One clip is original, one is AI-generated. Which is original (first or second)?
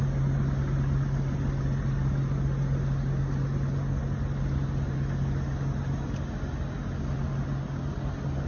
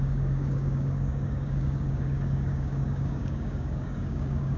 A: first